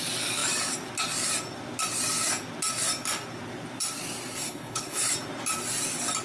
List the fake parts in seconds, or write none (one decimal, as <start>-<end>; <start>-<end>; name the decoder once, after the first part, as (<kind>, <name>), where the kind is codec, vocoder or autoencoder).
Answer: 4.4-5.1 (codec, HILCodec)